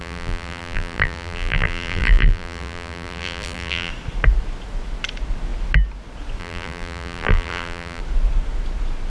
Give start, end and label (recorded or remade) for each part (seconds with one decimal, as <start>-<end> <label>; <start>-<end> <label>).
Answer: 0.0-3.9 remade; 3.9-6.4 recorded; 6.4-8.0 remade; 8.0-9.1 recorded